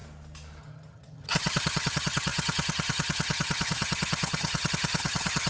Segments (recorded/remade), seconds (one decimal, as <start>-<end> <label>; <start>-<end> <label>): 0.0-0.6 recorded; 0.6-5.5 remade